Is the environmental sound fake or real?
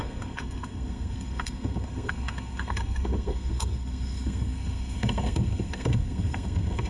fake